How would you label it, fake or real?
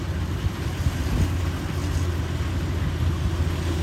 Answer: real